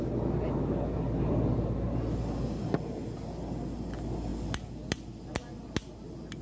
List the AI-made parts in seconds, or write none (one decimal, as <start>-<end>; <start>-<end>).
none